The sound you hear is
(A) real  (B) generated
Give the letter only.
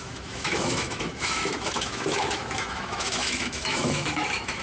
B